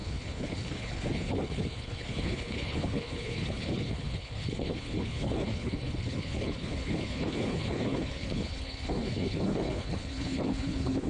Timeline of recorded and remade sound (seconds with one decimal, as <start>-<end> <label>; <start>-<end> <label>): 0.0-11.1 remade